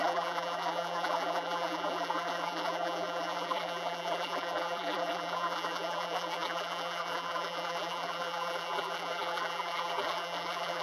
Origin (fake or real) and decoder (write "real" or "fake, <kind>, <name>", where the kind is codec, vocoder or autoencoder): fake, vocoder, BigVGAN v2